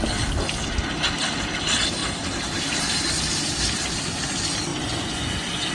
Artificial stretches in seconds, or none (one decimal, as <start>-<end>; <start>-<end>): 4.7-5.7